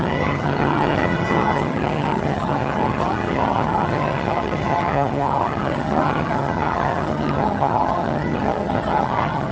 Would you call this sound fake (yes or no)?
yes